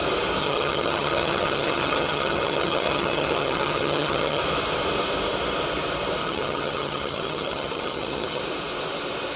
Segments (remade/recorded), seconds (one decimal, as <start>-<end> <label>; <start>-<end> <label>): 0.0-0.4 recorded; 0.4-4.4 remade; 4.4-6.2 recorded; 6.2-8.4 remade; 8.4-9.4 recorded

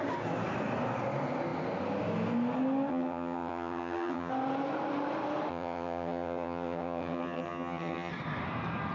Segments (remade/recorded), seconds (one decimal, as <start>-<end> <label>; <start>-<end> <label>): 0.0-2.9 recorded; 2.9-4.3 remade; 4.3-5.5 recorded; 5.5-8.1 remade; 8.1-8.9 recorded